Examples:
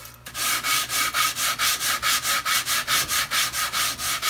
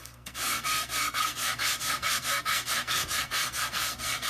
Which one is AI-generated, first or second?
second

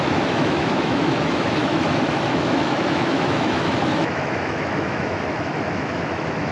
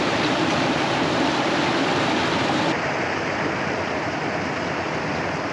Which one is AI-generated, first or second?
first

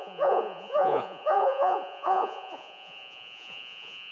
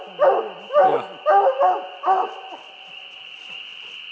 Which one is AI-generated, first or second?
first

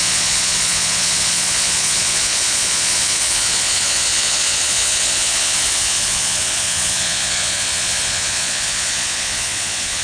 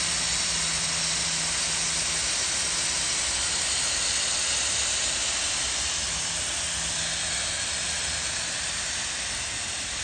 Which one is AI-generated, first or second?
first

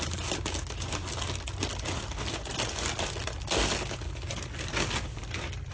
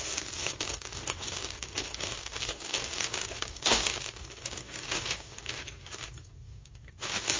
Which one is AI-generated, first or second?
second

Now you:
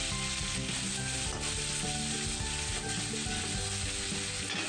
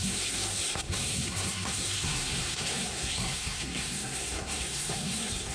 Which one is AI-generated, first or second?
second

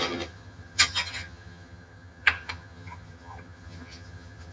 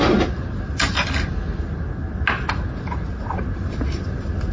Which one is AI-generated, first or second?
first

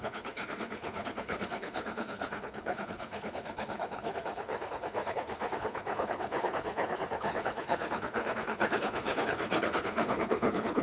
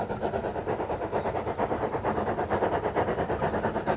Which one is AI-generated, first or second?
first